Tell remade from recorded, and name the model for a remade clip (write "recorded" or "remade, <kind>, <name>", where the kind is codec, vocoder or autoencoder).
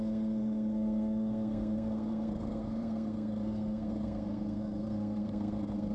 remade, codec, SNAC